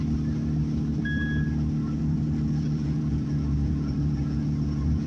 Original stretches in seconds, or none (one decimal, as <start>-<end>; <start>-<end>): 0.0-2.0